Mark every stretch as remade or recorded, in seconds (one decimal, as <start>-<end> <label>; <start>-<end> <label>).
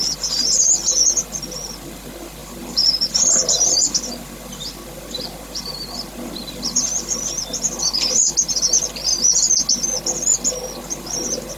0.0-2.4 recorded; 2.4-7.4 remade; 7.4-11.6 recorded